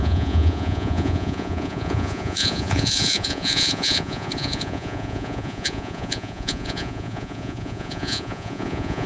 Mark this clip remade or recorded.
remade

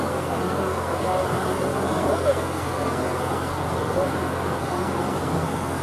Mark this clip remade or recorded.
remade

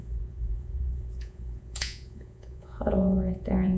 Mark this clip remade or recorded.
remade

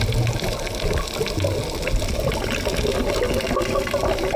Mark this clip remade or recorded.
recorded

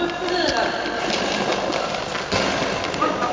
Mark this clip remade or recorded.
remade